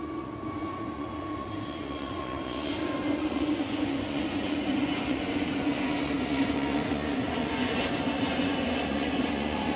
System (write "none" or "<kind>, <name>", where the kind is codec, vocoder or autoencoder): vocoder, Vocos